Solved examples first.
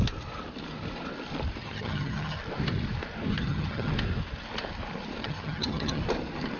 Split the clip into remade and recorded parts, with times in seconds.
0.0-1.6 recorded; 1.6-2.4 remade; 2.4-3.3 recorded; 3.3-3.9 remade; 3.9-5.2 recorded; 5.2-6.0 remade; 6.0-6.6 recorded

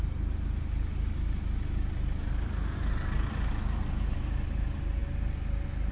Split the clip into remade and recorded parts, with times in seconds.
0.0-5.9 recorded

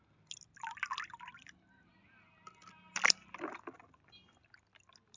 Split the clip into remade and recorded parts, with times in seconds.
0.0-5.2 recorded

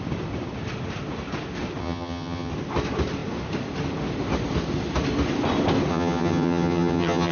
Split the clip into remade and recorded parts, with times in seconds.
0.0-1.8 recorded; 1.8-2.5 remade; 2.5-5.9 recorded; 5.9-7.3 remade